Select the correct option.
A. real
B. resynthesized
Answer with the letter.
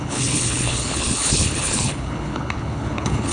B